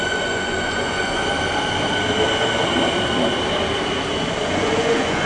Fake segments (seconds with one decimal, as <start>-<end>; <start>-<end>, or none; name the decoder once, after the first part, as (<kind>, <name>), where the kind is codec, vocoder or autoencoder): 0.0-1.2 (vocoder, Vocos); 4.4-5.3